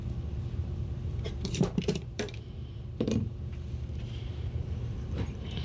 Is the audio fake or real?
fake